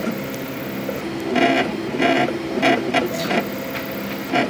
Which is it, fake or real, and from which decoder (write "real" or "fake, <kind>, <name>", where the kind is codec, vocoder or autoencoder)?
real